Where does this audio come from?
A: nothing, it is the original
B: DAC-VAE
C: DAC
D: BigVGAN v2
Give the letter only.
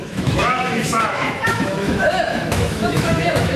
B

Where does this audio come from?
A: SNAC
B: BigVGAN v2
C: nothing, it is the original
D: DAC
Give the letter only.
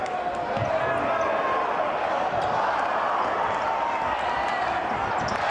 C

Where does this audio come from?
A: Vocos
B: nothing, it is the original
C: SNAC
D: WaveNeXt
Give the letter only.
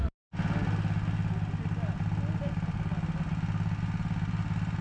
B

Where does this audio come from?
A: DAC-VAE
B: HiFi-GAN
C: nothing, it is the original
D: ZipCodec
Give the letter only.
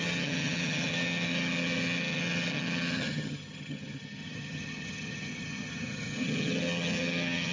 B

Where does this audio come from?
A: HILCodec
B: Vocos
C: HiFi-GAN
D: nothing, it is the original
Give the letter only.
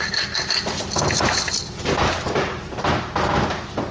D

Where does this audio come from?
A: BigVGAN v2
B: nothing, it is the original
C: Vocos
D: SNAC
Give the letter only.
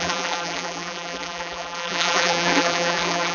A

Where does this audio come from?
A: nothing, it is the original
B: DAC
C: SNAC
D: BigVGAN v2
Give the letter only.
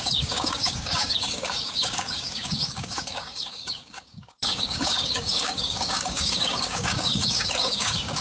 B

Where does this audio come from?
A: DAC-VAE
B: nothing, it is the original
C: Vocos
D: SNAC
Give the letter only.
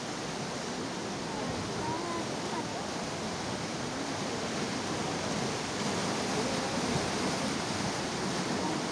B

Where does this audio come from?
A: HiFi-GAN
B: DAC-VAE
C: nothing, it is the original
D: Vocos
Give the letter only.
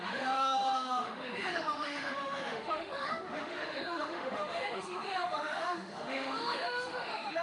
B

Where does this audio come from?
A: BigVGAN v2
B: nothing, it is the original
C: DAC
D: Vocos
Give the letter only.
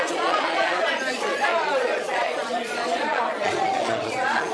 D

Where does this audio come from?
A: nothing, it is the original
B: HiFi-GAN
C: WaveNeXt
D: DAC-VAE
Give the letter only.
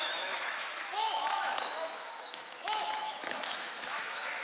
D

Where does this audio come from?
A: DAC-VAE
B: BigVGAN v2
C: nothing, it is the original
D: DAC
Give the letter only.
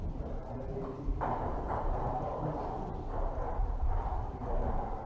B